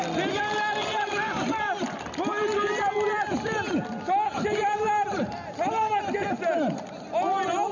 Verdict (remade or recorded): recorded